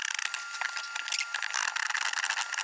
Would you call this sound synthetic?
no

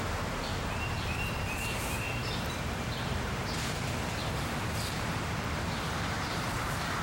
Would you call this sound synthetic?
yes